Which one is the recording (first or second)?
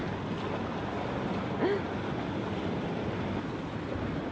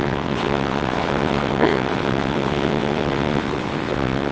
first